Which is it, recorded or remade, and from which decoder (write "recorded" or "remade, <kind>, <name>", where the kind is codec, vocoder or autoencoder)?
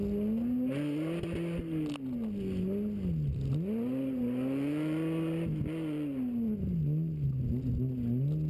recorded